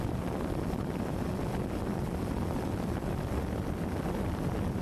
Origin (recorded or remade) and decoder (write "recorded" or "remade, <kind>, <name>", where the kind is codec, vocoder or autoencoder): recorded